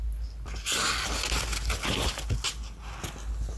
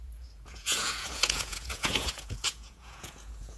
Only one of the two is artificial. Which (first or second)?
second